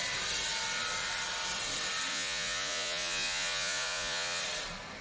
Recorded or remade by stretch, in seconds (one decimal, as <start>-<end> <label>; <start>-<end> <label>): 0.0-2.1 recorded; 2.1-4.4 remade; 4.4-5.0 recorded